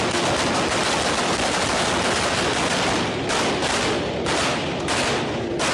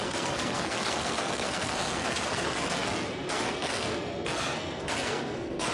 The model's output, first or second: second